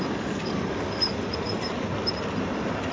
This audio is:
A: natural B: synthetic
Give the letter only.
A